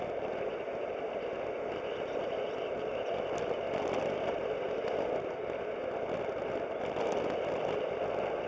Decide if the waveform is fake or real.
real